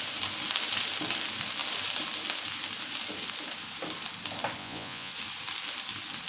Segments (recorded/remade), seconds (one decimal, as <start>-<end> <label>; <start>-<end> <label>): 0.0-4.6 recorded; 4.6-5.1 remade; 5.1-6.3 recorded